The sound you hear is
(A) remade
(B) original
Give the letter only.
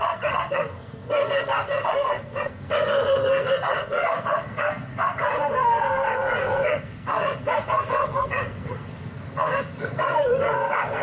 A